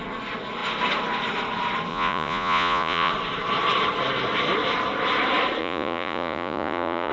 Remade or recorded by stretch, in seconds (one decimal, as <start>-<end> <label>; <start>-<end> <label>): 0.0-1.9 recorded; 1.9-3.1 remade; 3.1-5.6 recorded; 5.6-7.1 remade